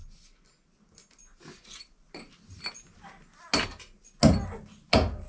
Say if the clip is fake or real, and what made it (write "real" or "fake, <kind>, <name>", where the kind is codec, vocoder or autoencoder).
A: real